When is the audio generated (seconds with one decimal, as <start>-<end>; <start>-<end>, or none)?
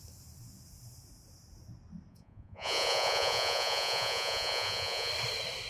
2.1-5.1